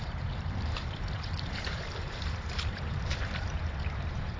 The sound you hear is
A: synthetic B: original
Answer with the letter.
A